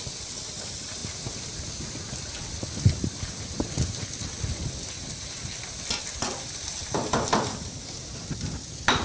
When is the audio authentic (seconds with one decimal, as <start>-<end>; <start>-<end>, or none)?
0.0-9.0